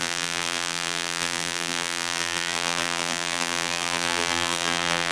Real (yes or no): no